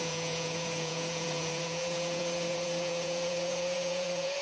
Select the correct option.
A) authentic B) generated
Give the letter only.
B